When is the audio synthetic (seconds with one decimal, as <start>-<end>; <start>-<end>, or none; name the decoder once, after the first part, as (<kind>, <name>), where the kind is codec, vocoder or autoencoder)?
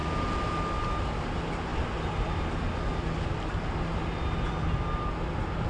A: none